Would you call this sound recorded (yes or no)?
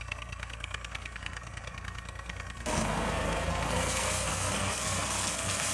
no